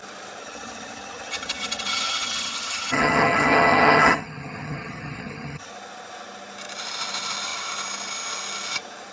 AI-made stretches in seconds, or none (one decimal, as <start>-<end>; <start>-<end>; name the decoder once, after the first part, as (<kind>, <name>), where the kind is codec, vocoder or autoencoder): 0.4-5.7 (vocoder, HiFi-GAN)